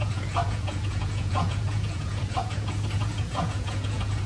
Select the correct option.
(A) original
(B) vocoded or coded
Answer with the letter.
B